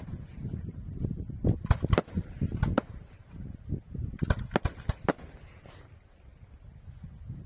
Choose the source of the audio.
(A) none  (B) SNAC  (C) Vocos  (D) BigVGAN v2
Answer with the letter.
A